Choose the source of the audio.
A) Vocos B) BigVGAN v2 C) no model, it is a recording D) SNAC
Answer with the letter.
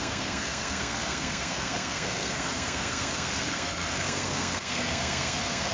D